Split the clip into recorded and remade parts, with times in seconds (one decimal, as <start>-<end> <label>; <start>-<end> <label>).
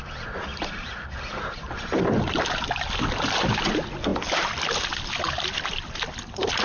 0.0-6.6 recorded